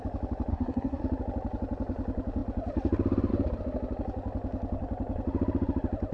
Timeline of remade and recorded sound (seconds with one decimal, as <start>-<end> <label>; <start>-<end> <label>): 0.0-0.5 recorded; 0.5-1.0 remade; 1.0-6.1 recorded